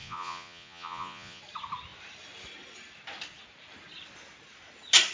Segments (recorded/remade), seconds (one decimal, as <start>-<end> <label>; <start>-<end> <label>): 0.0-1.4 remade; 1.4-5.1 recorded